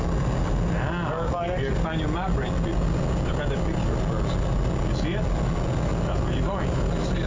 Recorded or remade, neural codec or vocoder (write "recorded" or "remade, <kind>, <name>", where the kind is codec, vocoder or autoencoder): recorded